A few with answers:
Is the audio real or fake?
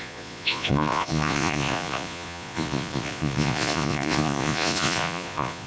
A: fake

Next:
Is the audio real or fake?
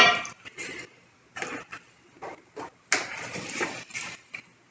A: real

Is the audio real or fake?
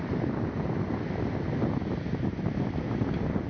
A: real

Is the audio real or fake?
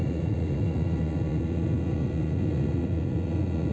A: fake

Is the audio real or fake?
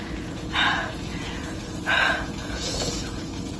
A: fake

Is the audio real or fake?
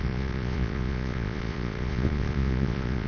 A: fake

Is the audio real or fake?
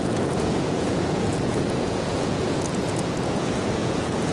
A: fake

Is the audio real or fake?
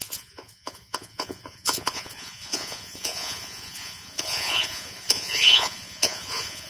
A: fake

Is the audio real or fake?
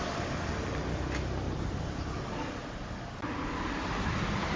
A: real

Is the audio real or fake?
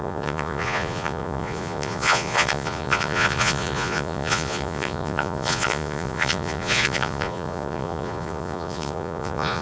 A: fake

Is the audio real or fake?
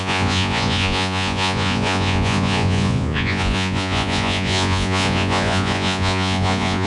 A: fake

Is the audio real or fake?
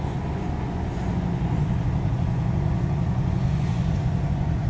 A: fake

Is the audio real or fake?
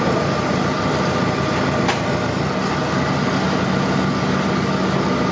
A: real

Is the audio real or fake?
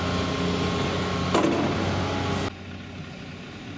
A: real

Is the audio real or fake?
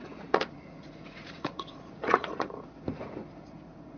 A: fake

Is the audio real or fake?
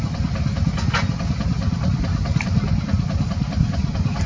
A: real